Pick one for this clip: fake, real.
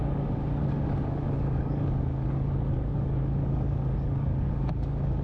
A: fake